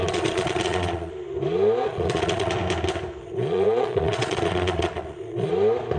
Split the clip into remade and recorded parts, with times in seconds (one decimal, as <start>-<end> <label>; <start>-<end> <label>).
0.0-1.1 remade; 1.1-1.9 recorded; 1.9-2.5 remade; 2.5-3.2 recorded; 3.2-5.5 remade; 5.5-6.0 recorded